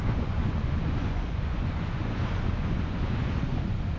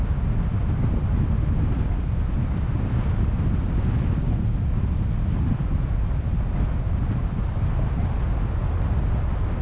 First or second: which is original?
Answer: second